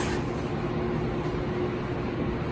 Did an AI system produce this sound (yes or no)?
no